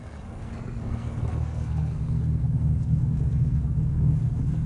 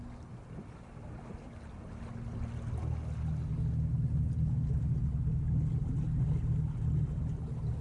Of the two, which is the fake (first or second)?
first